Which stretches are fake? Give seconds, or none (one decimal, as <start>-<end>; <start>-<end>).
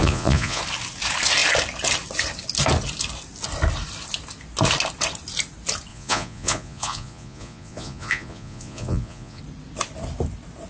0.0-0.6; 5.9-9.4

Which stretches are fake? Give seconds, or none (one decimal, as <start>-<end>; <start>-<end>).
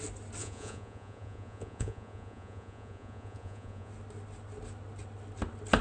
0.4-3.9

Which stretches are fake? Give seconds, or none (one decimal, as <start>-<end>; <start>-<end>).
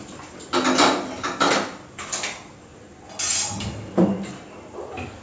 none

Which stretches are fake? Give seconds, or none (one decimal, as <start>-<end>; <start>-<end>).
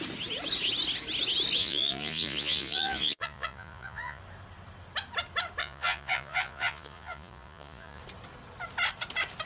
1.6-4.2; 5.6-8.0